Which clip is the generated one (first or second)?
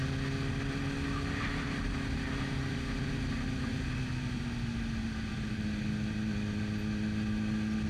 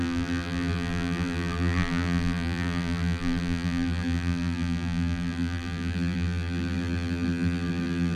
second